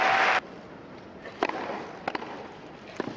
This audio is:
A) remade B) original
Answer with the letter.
B